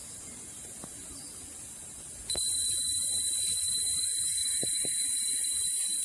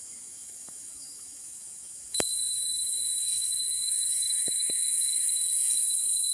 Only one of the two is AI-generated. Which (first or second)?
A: second